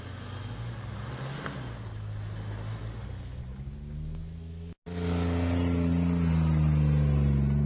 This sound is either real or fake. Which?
real